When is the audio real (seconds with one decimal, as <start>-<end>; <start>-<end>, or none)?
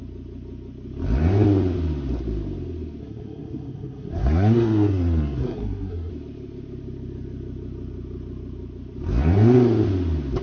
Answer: 0.0-3.0; 6.1-10.4